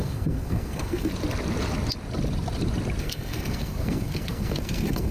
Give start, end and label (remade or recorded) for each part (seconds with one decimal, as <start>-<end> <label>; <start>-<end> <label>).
0.0-1.1 remade; 1.1-3.0 recorded; 3.0-5.1 remade